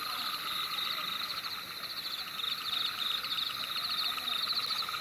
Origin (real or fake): real